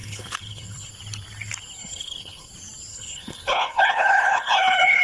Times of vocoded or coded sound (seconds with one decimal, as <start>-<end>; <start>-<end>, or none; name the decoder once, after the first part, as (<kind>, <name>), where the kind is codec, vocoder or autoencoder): 0.0-0.9 (codec, HILCodec); 1.8-2.5; 2.9-5.0